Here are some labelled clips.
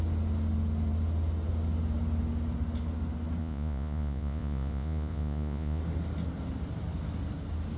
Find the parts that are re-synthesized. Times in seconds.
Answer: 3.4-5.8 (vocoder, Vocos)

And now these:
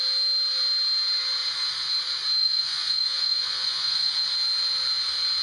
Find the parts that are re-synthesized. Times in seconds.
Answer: 2.4-4.1 (vocoder, Vocos)

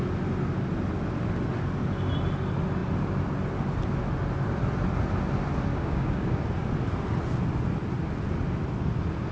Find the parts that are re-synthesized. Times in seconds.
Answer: 5.7-6.4 (codec, DAC)

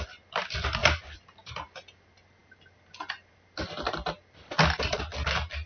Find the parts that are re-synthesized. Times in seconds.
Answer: 0.8-1.5 (vocoder, BigVGAN v2)